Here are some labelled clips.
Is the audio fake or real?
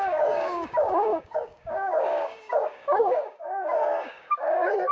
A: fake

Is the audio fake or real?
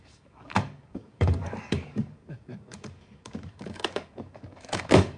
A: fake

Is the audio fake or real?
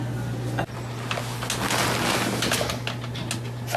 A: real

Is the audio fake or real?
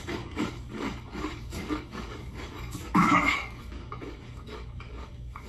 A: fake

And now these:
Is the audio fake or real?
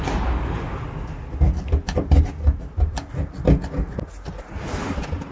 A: real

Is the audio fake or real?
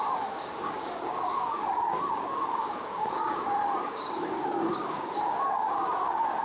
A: fake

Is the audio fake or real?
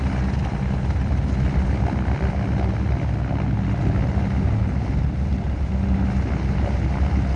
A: real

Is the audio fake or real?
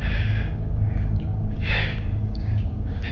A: fake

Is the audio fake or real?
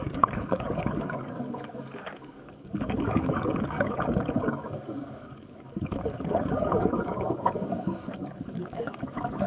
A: fake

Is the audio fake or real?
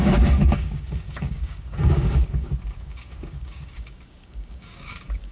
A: fake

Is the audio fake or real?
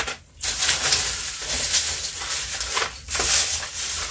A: real